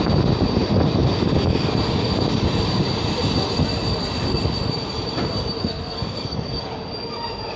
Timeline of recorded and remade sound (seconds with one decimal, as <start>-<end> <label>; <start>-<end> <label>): 0.0-5.6 recorded; 5.6-6.7 remade; 6.7-7.6 recorded